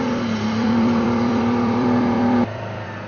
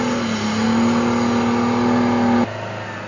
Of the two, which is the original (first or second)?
second